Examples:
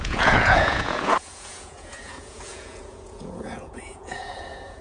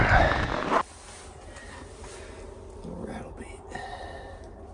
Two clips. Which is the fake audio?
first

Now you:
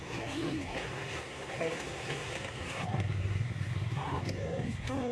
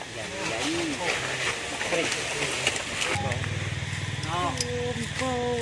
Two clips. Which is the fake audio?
first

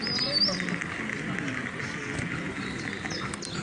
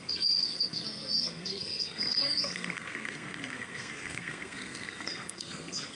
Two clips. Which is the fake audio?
second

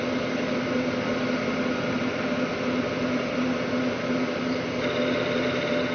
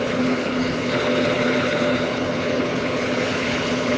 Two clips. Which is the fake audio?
second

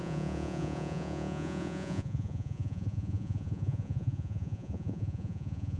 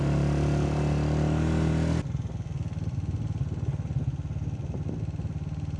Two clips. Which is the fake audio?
first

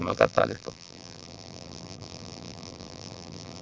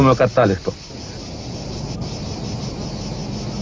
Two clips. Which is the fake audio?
first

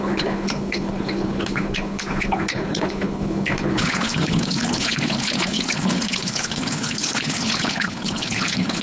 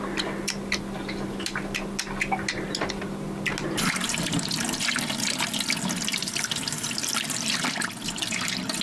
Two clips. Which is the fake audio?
first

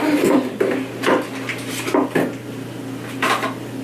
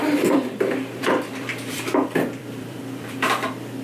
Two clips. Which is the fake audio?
second